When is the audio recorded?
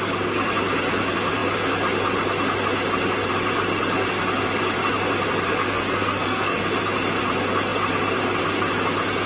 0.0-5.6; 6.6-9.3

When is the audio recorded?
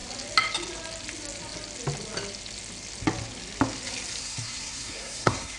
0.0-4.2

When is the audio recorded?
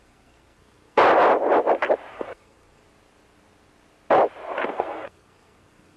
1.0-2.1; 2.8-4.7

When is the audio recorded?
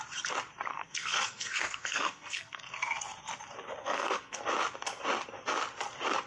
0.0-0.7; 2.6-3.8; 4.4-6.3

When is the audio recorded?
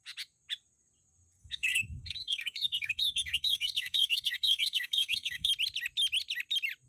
0.0-1.4; 5.5-6.9